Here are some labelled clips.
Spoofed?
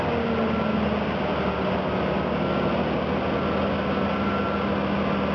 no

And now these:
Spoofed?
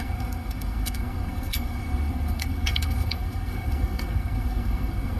yes